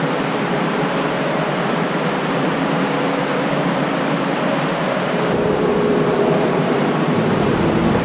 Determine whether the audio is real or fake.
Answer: fake